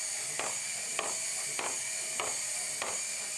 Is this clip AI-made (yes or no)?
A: no